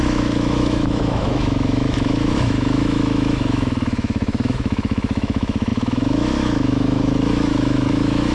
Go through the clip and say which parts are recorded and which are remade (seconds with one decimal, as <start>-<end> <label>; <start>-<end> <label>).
0.0-8.3 remade